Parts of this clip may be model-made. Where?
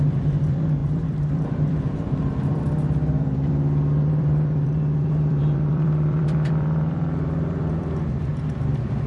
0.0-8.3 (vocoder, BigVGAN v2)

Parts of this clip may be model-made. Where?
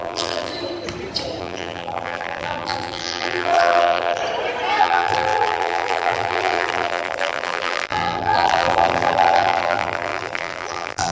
0.0-0.5 (vocoder, BigVGAN v2); 1.4-4.2; 4.8-11.1